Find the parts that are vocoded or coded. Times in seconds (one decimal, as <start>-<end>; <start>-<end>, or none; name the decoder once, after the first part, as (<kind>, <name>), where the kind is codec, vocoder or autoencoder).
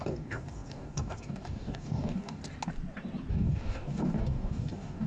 0.0-2.4 (codec, DAC); 3.3-5.1